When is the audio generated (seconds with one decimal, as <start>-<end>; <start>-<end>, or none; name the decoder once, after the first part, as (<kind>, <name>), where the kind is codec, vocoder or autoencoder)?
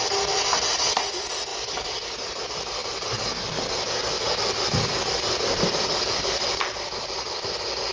1.5-2.4 (vocoder, BigVGAN v2)